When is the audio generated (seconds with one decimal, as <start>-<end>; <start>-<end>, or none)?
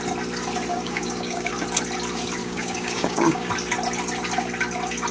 0.7-1.5; 2.4-3.5